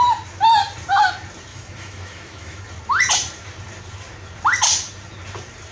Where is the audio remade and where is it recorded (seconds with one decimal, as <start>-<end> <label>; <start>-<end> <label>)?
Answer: 0.0-1.5 recorded; 1.5-2.6 remade; 2.6-5.7 recorded